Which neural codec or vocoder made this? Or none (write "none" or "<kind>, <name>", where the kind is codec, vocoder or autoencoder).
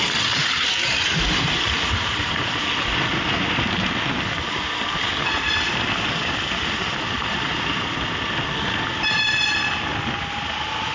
none